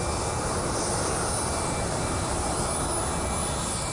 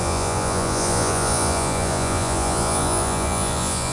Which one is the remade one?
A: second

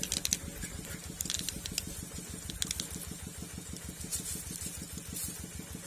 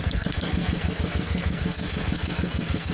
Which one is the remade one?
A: second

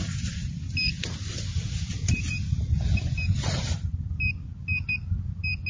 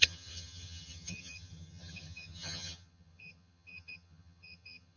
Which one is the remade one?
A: second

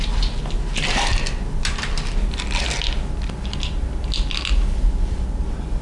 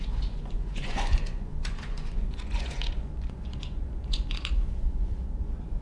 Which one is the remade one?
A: second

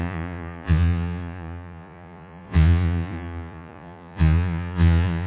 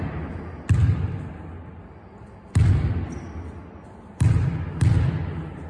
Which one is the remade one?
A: first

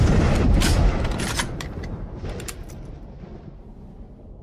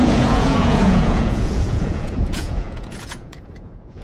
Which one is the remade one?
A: second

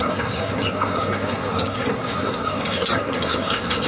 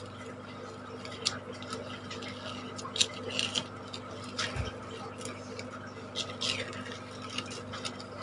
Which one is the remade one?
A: first